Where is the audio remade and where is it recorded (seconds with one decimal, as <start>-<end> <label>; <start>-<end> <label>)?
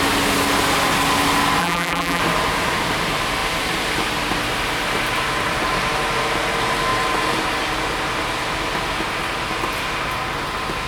0.0-1.6 recorded; 1.6-2.2 remade; 2.2-10.9 recorded